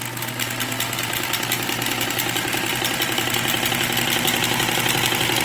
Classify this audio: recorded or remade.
recorded